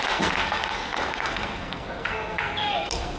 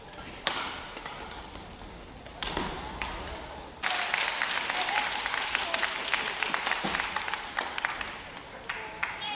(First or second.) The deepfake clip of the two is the first